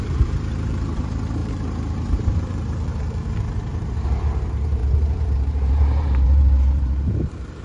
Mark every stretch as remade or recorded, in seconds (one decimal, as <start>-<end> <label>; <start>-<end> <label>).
0.0-7.6 remade